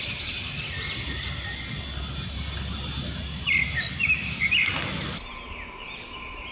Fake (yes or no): no